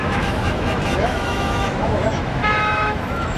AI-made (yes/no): yes